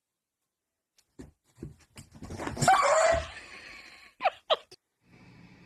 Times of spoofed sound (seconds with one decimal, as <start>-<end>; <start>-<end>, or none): none